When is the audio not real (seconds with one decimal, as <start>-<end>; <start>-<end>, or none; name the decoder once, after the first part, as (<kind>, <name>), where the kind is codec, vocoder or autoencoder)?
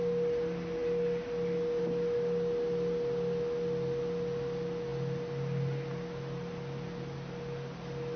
none